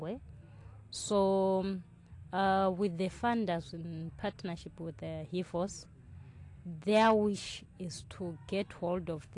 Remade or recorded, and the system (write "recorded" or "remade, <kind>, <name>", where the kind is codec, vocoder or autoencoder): recorded